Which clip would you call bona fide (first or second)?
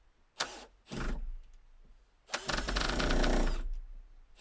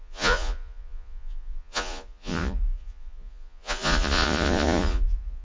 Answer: first